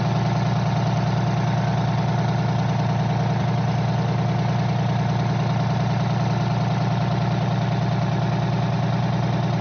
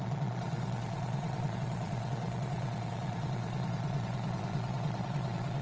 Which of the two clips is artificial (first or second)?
second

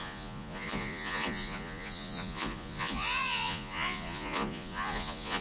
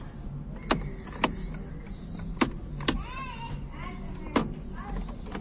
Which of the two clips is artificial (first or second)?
first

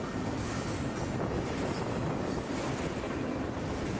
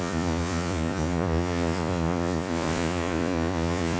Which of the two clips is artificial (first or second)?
second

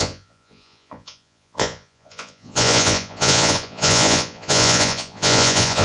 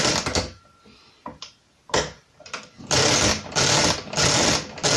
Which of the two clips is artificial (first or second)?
first